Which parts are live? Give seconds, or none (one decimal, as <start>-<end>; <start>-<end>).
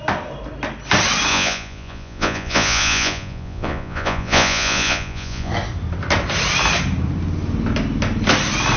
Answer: 0.0-1.3; 5.5-8.8